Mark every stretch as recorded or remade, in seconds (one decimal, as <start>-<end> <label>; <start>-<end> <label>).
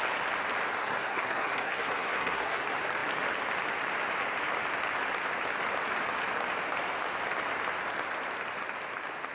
0.0-0.8 recorded; 0.8-2.6 remade; 2.6-9.3 recorded